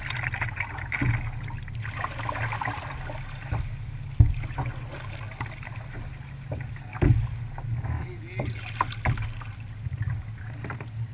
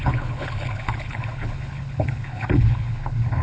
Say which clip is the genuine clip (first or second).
first